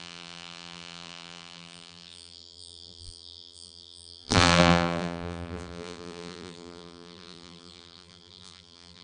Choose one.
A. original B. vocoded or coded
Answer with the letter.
B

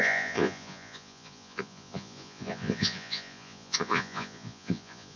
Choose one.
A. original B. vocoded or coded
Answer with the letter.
B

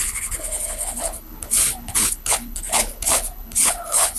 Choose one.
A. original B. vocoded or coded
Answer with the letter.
B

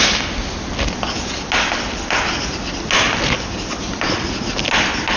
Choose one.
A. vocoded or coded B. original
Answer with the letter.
B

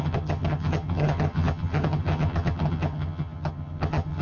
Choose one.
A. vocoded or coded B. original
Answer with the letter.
A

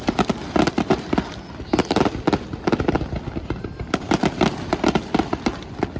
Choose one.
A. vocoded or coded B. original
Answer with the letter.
A